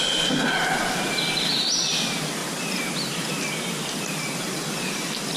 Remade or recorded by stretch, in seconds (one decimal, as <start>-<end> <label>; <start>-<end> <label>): 0.0-5.4 recorded